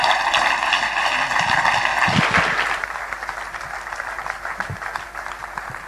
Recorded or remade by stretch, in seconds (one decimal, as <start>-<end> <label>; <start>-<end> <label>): 0.0-5.9 recorded